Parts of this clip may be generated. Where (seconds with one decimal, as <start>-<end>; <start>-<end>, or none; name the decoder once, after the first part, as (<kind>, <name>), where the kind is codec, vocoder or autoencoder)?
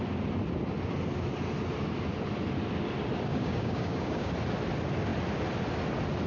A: 3.3-4.3 (codec, DAC)